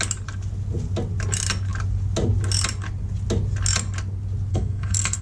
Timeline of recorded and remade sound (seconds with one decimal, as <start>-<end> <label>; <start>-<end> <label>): 0.0-4.5 recorded; 4.5-5.2 remade